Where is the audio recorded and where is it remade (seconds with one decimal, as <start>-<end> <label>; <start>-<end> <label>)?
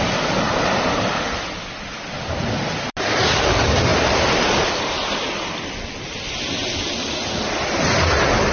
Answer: 0.0-8.5 recorded